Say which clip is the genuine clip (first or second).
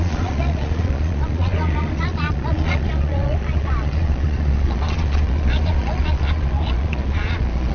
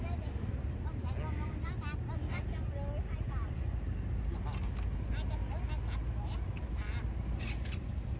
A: second